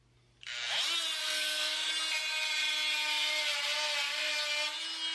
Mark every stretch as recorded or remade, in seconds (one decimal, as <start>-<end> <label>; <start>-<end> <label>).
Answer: 0.0-1.2 recorded; 1.2-1.9 remade; 1.9-5.1 recorded

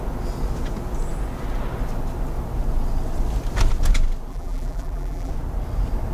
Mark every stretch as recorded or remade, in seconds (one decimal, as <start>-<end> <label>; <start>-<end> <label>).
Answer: 0.0-4.3 recorded; 4.3-5.3 remade; 5.3-6.1 recorded

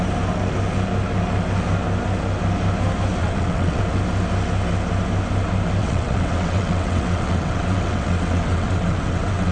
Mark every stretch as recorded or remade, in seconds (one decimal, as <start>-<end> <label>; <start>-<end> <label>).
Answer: 0.0-3.2 recorded; 3.2-3.8 remade; 3.8-5.8 recorded; 5.8-9.5 remade

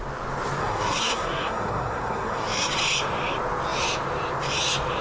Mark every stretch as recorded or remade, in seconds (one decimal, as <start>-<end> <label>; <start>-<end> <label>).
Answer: 0.0-0.6 recorded; 0.6-2.7 remade; 2.7-5.0 recorded

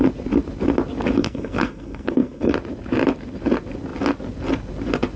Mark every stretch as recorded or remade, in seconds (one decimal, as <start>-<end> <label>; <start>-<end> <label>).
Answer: 0.0-1.2 recorded; 1.2-2.5 remade; 2.5-5.2 recorded